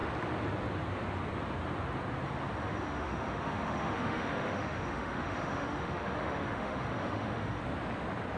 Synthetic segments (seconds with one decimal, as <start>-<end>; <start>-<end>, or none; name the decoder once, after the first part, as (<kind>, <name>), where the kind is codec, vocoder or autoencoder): 2.6-7.6 (autoencoder, DAC-VAE)